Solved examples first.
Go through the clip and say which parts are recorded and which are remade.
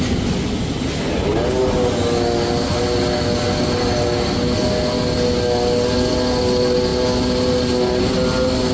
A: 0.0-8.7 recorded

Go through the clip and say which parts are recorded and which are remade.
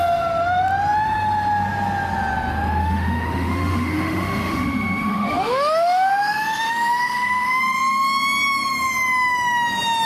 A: 0.0-2.8 recorded; 2.8-7.6 remade; 7.6-10.1 recorded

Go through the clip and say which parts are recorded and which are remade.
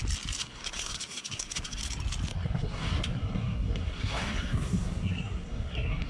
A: 0.0-0.4 recorded; 0.4-1.8 remade; 1.8-2.3 recorded; 2.3-6.1 remade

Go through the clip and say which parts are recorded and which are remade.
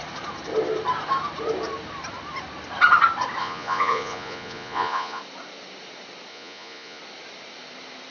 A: 0.0-3.4 recorded; 3.4-5.2 remade; 5.2-6.3 recorded; 6.3-7.0 remade; 7.0-8.1 recorded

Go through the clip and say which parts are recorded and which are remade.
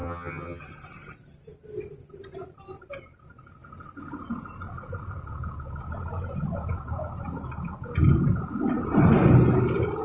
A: 0.0-0.6 remade; 0.6-10.0 recorded